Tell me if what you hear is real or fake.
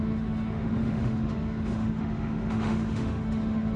fake